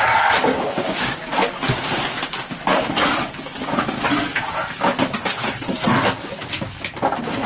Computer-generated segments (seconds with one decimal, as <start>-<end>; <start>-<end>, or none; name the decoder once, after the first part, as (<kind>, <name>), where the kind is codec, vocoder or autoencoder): none